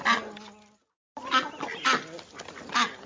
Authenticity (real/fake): real